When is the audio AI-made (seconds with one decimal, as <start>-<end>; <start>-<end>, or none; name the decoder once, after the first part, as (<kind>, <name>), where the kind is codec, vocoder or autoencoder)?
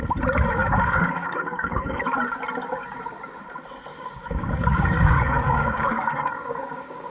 0.6-2.0 (codec, DAC); 3.9-7.1